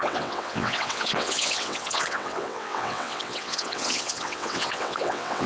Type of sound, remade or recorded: remade